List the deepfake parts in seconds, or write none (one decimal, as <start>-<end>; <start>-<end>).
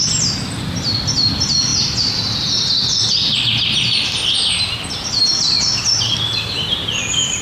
none